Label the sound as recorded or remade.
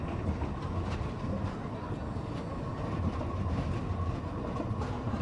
recorded